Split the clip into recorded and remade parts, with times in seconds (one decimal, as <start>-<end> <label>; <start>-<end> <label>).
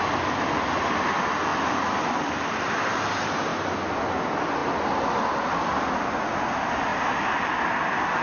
0.0-1.5 recorded; 1.5-3.1 remade; 3.1-8.2 recorded